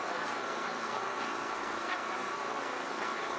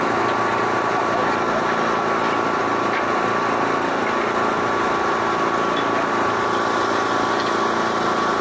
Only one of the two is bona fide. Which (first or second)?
second